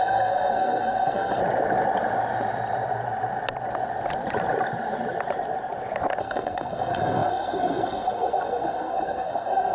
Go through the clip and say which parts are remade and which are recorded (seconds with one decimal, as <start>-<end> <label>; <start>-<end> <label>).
0.0-1.4 remade; 1.4-6.2 recorded; 6.2-9.7 remade

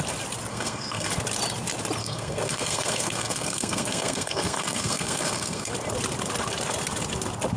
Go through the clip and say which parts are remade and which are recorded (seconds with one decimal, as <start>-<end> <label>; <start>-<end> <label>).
0.0-0.5 recorded; 0.5-1.1 remade; 1.1-2.0 recorded; 2.0-5.7 remade; 5.7-7.6 recorded

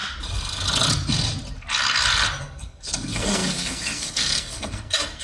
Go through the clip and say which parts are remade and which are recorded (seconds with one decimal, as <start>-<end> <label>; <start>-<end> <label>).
0.0-2.4 recorded; 2.4-5.2 remade